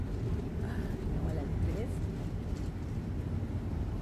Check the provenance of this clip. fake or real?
real